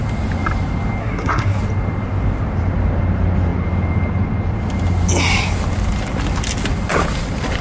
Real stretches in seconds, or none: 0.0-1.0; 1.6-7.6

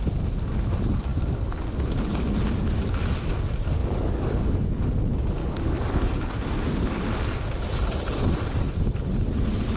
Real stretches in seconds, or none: 0.0-3.8; 4.5-5.4; 6.3-9.8

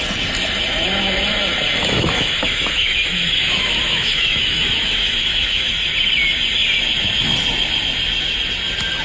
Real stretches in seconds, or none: 0.0-1.8; 5.7-9.0